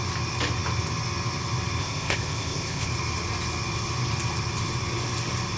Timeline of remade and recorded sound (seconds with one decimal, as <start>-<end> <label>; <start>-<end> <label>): 0.0-1.8 recorded; 1.8-2.9 remade; 2.9-5.6 recorded